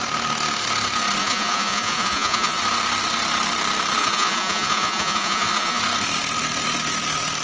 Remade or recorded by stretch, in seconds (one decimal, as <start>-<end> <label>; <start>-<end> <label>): 0.0-1.2 recorded; 1.2-2.6 remade; 2.6-4.0 recorded; 4.0-5.8 remade; 5.8-7.4 recorded